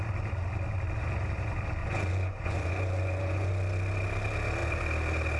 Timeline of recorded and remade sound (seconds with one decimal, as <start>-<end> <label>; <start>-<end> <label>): 0.0-1.8 recorded; 1.8-3.5 remade; 3.5-5.4 recorded